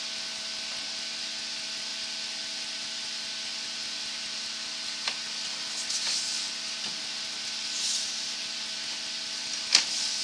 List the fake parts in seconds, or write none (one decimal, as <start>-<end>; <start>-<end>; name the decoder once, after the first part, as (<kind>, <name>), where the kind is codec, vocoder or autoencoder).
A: none